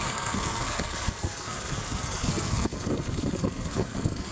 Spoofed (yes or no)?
yes